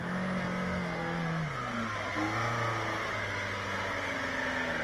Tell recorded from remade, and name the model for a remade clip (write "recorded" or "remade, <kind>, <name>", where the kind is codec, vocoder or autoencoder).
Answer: recorded